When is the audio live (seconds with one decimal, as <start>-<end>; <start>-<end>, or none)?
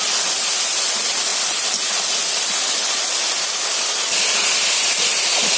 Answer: 0.0-5.6